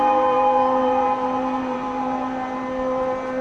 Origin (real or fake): fake